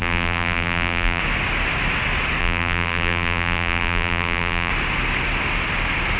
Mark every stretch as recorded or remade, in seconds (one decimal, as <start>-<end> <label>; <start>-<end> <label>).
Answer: 0.0-1.2 remade; 1.2-2.4 recorded; 2.4-4.7 remade; 4.7-6.2 recorded